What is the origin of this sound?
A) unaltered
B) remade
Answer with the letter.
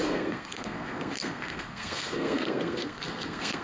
B